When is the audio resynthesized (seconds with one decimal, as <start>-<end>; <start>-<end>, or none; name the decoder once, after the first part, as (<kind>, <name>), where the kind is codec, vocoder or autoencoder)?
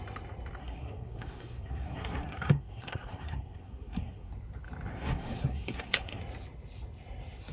0.6-4.3 (codec, SNAC); 4.9-6.2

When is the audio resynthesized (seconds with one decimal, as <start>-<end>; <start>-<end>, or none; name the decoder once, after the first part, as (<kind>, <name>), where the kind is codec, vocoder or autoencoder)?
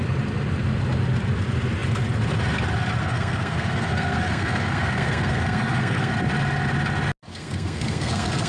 3.0-6.1 (codec, SNAC); 7.3-8.5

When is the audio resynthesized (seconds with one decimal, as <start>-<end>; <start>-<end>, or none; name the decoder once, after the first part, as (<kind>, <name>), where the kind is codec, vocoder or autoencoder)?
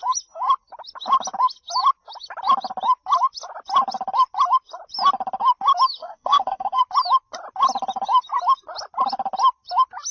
6.0-6.8 (codec, SNAC)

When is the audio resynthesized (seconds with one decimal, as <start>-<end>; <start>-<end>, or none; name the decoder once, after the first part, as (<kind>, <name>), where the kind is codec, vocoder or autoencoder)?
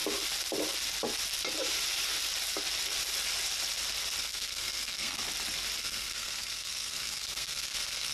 4.2-5.2 (codec, SNAC); 5.8-8.1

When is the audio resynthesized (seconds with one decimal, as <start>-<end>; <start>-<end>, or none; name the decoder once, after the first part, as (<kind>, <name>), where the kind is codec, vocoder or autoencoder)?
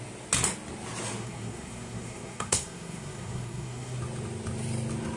1.2-4.0 (codec, SNAC)